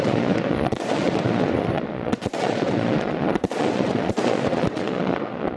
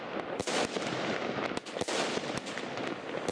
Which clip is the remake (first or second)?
first